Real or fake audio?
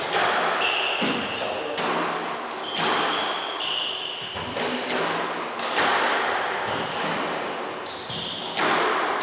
real